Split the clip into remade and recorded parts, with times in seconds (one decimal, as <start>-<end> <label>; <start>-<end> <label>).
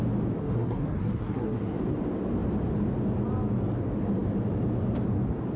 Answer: 0.0-0.4 recorded; 0.4-1.8 remade; 1.8-5.6 recorded